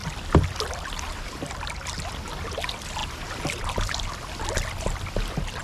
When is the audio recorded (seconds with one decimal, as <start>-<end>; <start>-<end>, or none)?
0.0-5.6